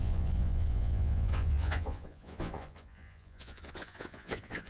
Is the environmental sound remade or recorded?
remade